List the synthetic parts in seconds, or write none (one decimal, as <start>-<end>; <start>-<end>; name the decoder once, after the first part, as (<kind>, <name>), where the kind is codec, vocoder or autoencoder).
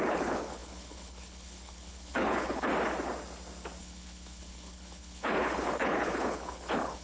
0.0-2.7 (codec, HILCodec); 3.8-7.0